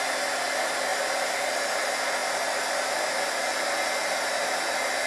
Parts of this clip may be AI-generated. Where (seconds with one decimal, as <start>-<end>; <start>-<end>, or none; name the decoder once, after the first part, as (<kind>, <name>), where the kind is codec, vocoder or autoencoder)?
none

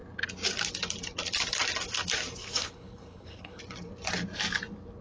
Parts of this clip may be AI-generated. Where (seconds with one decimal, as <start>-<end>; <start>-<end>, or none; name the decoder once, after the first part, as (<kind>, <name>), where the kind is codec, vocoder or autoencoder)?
2.4-3.6 (codec, HILCodec)

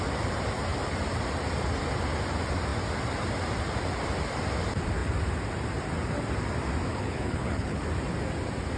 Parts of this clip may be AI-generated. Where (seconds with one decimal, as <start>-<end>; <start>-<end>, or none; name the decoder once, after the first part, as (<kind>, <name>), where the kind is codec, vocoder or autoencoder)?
6.9-7.8 (codec, HILCodec)

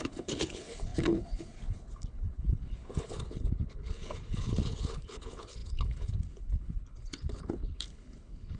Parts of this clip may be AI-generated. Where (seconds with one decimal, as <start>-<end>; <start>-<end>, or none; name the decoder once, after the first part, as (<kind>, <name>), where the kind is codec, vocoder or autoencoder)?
0.0-8.6 (codec, HILCodec)

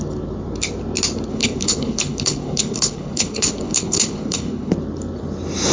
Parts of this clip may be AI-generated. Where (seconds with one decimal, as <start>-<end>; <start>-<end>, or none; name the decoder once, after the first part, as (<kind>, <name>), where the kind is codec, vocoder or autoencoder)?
1.3-4.7 (codec, HILCodec)

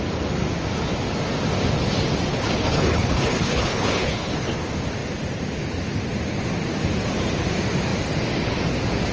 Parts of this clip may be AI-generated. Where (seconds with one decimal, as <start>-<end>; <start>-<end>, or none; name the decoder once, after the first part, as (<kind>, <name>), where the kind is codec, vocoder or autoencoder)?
2.3-4.5 (codec, HILCodec)

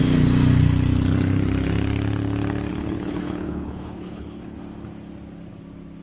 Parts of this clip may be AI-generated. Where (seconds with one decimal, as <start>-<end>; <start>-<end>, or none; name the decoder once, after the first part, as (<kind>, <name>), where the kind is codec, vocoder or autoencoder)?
2.7-4.6 (codec, HILCodec)

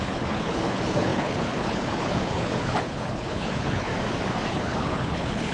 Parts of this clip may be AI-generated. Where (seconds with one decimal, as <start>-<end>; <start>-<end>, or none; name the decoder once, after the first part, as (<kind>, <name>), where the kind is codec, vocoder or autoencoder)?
0.0-3.9 (codec, HILCodec); 4.5-5.5